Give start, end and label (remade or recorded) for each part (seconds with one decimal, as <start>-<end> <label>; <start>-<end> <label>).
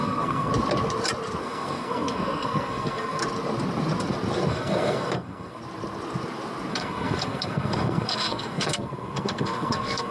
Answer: 0.0-0.5 remade; 0.5-1.4 recorded; 1.4-3.2 remade; 3.2-4.5 recorded; 4.5-5.6 remade; 5.6-6.7 recorded; 6.7-10.1 remade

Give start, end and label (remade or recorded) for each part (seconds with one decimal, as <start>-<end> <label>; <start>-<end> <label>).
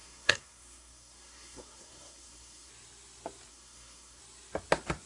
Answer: 0.0-2.7 remade; 2.7-3.5 recorded; 3.5-4.2 remade; 4.2-5.1 recorded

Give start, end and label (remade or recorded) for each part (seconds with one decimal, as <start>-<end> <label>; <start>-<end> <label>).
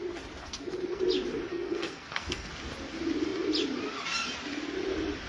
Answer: 0.0-0.4 recorded; 0.4-1.0 remade; 1.0-1.5 recorded; 1.5-2.5 remade; 2.5-5.3 recorded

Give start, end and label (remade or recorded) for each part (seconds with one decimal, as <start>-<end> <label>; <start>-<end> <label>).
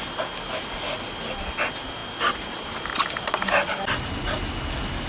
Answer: 0.0-5.1 recorded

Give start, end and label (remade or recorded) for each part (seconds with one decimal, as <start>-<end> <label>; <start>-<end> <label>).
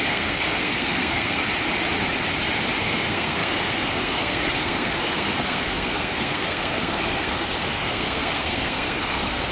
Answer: 0.0-1.4 remade; 1.4-2.8 recorded; 2.8-9.5 remade